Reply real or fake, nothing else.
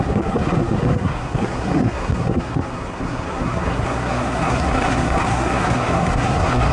fake